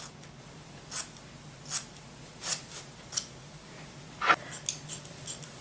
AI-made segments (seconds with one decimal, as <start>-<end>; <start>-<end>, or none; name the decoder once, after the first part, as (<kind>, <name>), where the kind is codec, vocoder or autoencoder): none